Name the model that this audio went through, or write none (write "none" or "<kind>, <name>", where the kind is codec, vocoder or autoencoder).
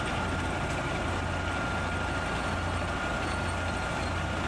none